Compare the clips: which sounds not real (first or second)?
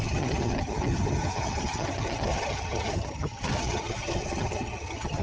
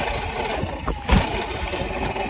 first